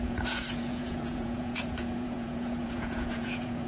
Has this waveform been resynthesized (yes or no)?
yes